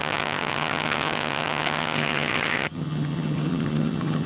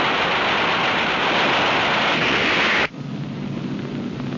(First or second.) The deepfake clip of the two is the first